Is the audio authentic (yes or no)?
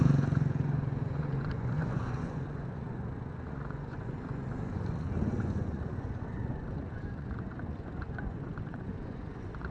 no